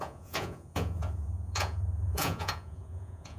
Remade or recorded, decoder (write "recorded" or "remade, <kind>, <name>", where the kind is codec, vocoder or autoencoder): remade, vocoder, Vocos